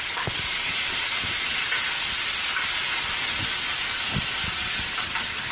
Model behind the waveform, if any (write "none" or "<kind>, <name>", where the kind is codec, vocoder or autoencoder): none